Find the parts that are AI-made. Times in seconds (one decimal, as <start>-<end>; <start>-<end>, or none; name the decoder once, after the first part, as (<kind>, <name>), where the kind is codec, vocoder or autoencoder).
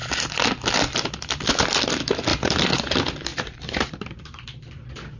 2.3-2.9 (vocoder, BigVGAN v2); 3.3-4.7